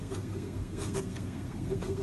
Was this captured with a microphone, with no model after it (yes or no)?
no